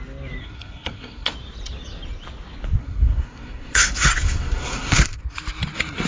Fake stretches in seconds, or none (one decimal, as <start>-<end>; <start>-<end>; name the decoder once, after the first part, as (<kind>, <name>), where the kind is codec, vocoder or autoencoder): 0.4-1.3 (codec, SNAC); 2.8-5.2